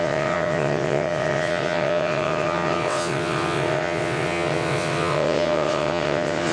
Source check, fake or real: fake